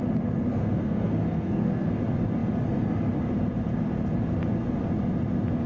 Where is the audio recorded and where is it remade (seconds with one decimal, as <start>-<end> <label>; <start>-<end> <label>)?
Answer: 0.0-0.5 recorded; 0.5-2.0 remade; 2.0-5.7 recorded